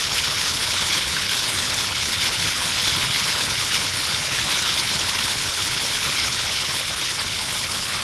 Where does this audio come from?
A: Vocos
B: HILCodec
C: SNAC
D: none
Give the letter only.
B